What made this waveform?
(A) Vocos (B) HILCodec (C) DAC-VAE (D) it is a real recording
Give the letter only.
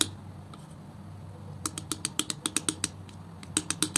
D